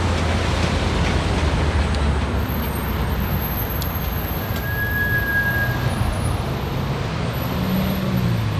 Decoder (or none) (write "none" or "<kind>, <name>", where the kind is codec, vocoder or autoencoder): none